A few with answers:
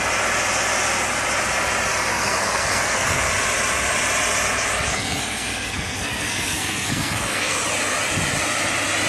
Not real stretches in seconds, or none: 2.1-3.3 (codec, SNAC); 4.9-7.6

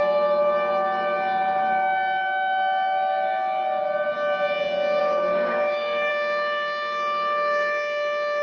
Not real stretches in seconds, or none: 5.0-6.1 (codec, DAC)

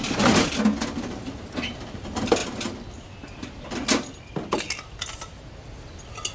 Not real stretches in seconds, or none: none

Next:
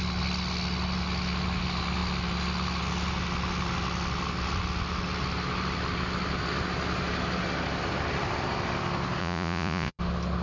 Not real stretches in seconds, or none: 9.2-10.0 (vocoder, Vocos)

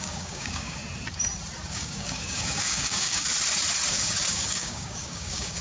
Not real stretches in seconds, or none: 0.0-0.8 (codec, DAC); 1.7-3.3; 3.9-5.6